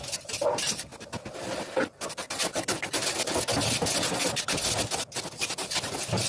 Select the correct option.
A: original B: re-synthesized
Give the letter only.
A